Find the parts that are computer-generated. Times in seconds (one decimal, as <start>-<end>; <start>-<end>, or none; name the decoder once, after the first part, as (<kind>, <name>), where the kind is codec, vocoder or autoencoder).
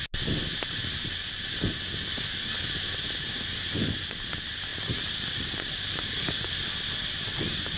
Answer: 3.8-4.3 (vocoder, BigVGAN v2); 4.7-6.5